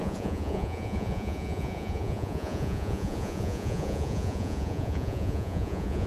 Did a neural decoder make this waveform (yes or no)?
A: yes